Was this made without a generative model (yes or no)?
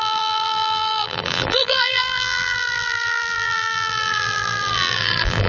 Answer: no